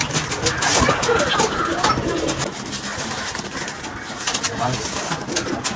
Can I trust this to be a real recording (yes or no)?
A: yes